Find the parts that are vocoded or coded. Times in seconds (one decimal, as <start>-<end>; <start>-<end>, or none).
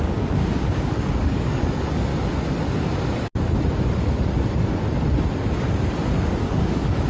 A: 0.0-2.1; 6.4-7.1